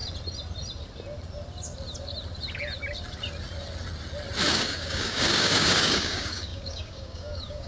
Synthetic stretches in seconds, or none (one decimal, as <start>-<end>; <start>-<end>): 4.5-7.7